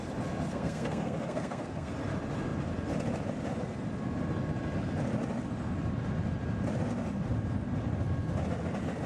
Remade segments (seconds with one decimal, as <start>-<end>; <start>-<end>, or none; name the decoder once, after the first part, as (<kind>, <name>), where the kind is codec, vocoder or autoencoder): 0.5-1.9 (codec, SNAC)

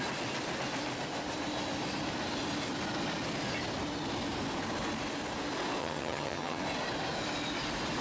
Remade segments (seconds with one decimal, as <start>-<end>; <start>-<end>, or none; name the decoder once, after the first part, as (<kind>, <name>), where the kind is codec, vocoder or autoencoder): 5.8-6.6 (vocoder, HiFi-GAN)

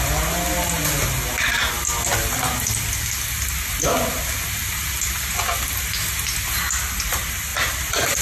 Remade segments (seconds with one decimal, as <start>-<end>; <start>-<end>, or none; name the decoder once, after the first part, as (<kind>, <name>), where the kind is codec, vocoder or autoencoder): 7.5-8.2 (vocoder, BigVGAN v2)